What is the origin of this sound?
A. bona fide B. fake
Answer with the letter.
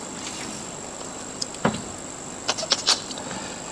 B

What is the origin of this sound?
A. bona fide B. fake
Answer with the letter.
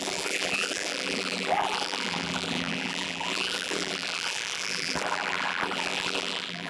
B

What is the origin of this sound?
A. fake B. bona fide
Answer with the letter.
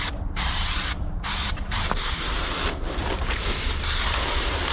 A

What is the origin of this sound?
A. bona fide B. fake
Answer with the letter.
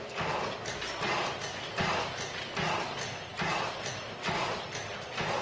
A